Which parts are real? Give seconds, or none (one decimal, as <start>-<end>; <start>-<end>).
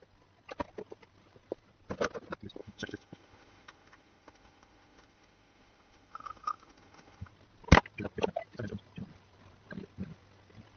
0.0-2.6; 7.3-10.8